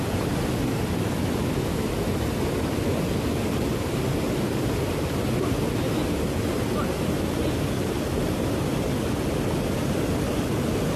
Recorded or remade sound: recorded